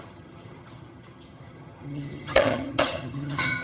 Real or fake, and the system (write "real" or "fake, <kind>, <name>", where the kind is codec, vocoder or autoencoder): fake, vocoder, HiFi-GAN